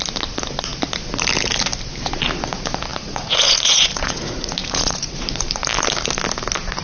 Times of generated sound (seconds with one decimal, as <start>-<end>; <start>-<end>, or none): 2.9-5.3